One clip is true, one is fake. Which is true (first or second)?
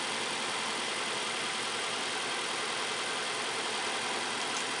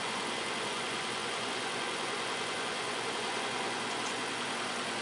first